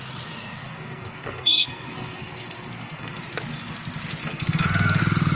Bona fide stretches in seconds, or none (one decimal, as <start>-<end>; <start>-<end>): 0.0-0.6; 3.2-4.2; 5.0-5.4